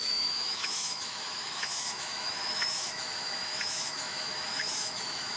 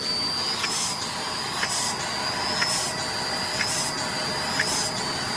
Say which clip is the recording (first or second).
second